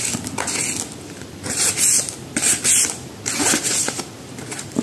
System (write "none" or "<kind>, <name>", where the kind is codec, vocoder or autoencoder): none